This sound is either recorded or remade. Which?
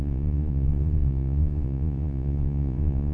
remade